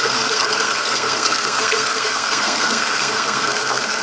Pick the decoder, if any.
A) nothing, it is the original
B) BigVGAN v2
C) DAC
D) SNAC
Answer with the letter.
D